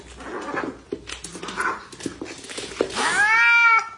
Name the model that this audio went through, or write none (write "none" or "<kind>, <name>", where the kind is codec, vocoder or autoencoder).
none